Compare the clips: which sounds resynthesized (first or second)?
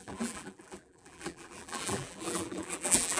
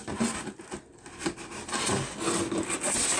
first